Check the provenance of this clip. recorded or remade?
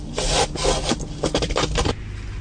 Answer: recorded